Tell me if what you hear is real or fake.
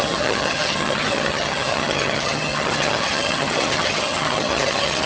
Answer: fake